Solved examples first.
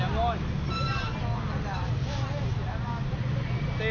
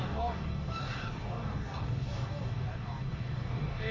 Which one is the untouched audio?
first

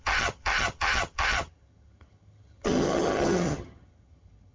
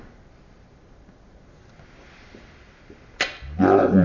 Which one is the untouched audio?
second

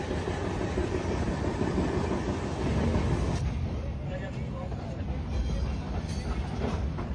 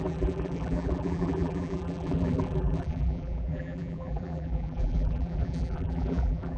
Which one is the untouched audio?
first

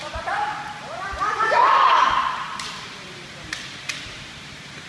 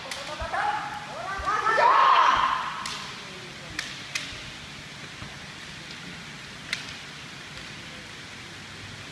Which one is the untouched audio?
second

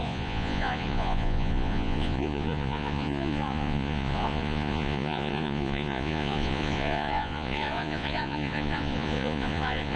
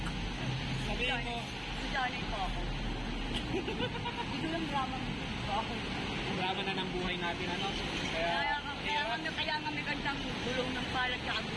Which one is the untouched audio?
second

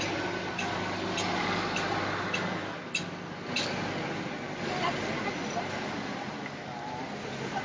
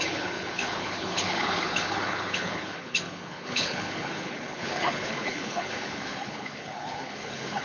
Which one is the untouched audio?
first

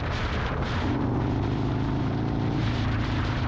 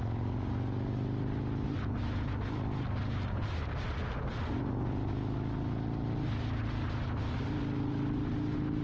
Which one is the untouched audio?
second